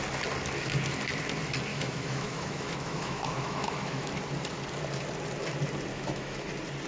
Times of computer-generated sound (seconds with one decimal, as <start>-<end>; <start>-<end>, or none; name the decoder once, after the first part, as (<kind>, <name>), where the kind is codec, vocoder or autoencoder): 1.7-4.1 (autoencoder, DAC-VAE); 5.9-6.5